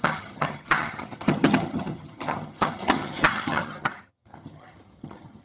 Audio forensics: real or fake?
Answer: fake